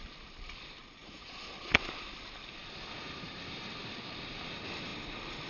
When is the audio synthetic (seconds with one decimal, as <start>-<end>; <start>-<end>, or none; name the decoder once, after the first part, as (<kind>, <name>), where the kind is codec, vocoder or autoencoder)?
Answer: 1.0-2.1 (vocoder, Vocos)